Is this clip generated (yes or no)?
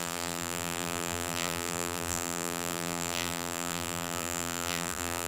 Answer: yes